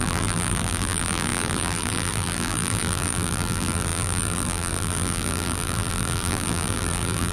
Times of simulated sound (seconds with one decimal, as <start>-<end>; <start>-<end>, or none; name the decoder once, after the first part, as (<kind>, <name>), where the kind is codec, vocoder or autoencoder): 0.0-7.3 (vocoder, BigVGAN v2)